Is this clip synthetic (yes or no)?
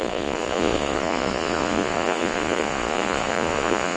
yes